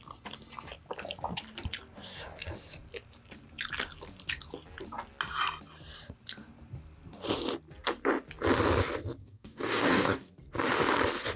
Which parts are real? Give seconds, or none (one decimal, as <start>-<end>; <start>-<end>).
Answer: 0.0-9.2; 10.3-11.4